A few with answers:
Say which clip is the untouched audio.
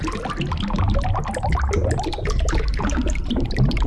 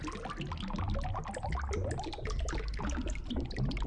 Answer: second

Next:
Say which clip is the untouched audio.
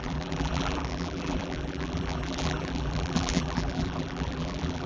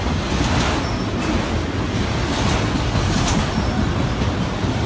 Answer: second